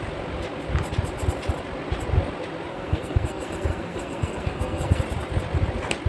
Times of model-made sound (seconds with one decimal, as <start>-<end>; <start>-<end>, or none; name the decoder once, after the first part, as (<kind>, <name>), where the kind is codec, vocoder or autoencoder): 2.7-5.0 (codec, SNAC)